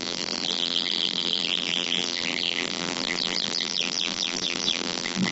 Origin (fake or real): fake